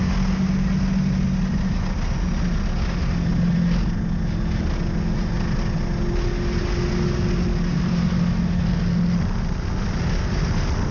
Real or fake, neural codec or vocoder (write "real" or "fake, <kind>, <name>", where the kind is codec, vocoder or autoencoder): real